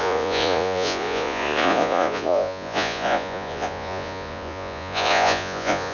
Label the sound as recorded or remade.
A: remade